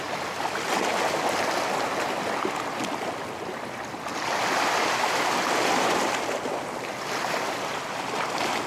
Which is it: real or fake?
real